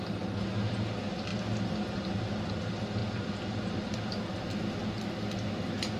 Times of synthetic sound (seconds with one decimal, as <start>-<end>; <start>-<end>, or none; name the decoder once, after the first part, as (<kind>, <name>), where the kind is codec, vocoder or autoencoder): none